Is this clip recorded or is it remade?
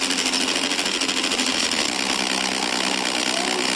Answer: recorded